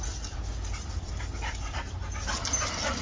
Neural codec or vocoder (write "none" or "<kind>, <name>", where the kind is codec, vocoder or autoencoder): none